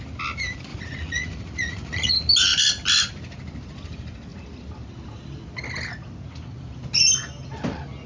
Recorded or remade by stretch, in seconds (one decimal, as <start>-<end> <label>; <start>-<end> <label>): 0.0-0.7 recorded; 0.7-2.1 remade; 2.1-8.1 recorded